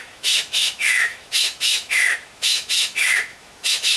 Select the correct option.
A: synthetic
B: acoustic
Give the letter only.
A